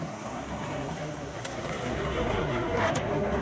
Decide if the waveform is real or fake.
fake